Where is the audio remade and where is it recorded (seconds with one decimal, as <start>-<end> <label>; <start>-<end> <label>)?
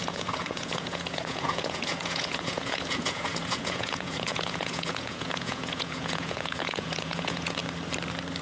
0.0-7.6 remade; 7.6-8.4 recorded